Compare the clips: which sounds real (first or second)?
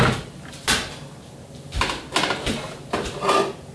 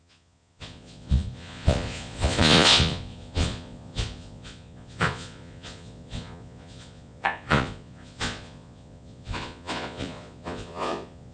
first